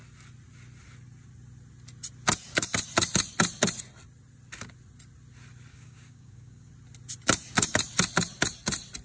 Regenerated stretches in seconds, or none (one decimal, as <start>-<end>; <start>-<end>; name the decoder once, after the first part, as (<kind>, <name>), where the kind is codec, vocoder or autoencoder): 5.7-6.7 (codec, DAC)